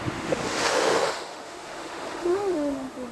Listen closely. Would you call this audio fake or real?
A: fake